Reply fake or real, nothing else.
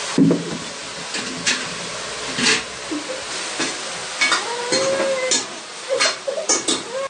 real